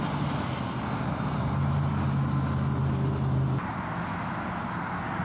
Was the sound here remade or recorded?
recorded